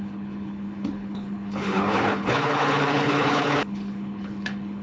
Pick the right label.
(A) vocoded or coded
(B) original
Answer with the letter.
A